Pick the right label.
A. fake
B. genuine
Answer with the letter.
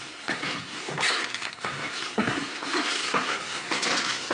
A